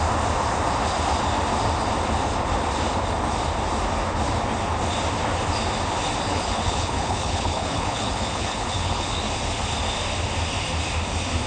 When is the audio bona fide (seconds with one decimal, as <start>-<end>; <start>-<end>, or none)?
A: 0.0-6.3; 9.2-11.5